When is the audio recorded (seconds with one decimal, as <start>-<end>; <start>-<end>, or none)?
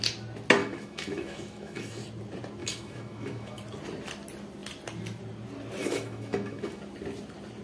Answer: 0.0-0.6; 2.0-2.6; 3.6-5.8; 6.8-7.6